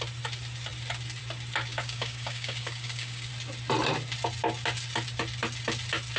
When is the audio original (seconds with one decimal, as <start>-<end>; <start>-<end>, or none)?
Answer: 0.0-1.7; 3.3-6.2